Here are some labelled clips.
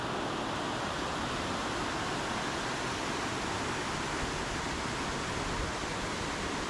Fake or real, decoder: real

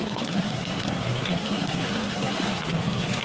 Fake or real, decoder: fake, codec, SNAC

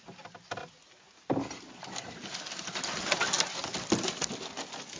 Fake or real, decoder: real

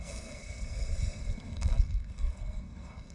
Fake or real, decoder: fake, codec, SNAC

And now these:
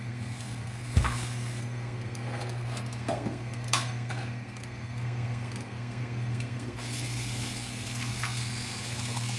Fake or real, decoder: fake, codec, SNAC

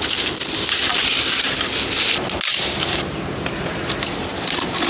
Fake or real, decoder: real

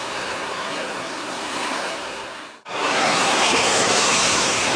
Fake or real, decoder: fake, codec, SNAC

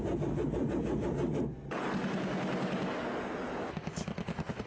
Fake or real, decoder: real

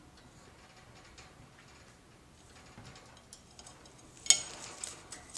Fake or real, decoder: real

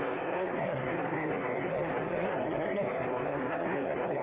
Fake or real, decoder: fake, codec, SNAC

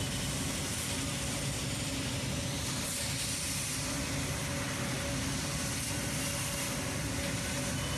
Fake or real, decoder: real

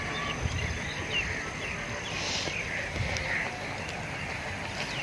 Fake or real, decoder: real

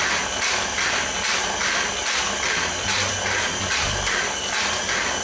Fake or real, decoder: real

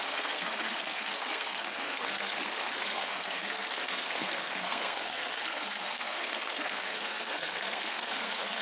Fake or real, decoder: fake, codec, SNAC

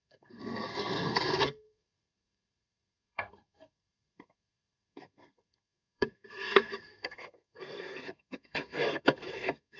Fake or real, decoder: fake, codec, SNAC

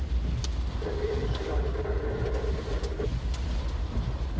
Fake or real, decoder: real